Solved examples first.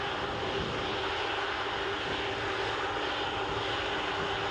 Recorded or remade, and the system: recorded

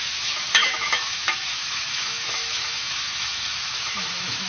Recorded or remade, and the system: remade, autoencoder, DAC-VAE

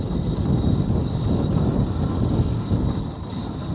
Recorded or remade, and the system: recorded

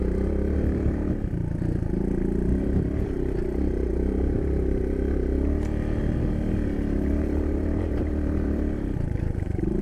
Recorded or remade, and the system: remade, vocoder, BigVGAN v2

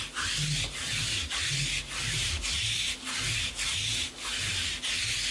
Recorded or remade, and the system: recorded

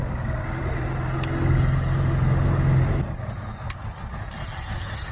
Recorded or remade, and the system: recorded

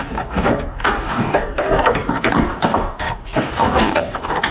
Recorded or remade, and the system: remade, codec, DAC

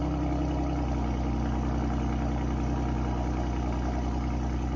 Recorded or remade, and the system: recorded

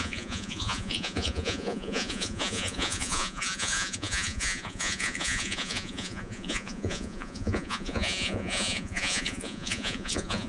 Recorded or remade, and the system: remade, vocoder, Vocos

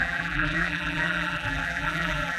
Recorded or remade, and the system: remade, vocoder, BigVGAN v2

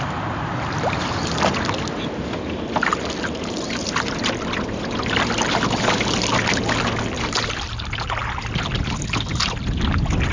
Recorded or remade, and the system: recorded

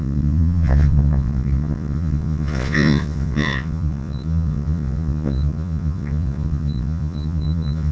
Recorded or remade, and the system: remade, vocoder, Vocos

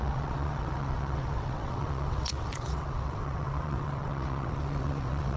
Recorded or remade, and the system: remade, vocoder, WaveNeXt